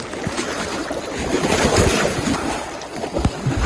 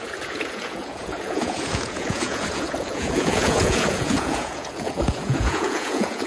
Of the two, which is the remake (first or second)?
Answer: second